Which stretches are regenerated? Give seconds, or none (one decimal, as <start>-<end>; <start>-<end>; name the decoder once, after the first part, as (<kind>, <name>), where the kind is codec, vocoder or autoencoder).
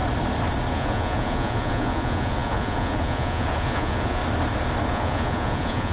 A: 0.7-4.2 (vocoder, Vocos); 4.9-5.9